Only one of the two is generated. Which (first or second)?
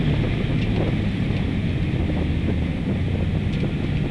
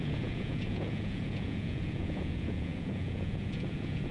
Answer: second